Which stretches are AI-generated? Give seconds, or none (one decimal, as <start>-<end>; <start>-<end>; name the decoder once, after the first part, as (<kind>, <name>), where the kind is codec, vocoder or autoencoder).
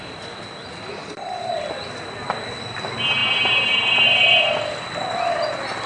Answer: 1.0-1.6 (vocoder, BigVGAN v2); 3.2-3.8